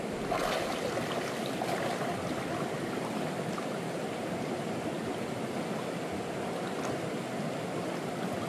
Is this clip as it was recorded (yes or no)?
yes